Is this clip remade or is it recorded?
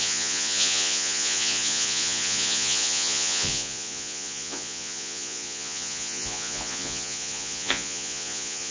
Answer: remade